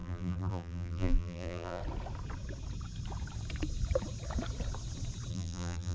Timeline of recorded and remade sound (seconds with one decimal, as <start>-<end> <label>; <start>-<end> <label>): 0.0-1.8 remade; 1.8-5.3 recorded; 5.3-5.9 remade